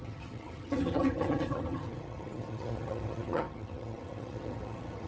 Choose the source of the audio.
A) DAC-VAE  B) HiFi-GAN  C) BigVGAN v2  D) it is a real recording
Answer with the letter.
B